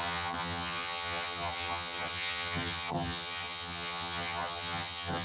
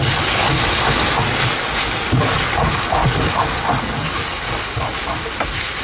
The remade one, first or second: first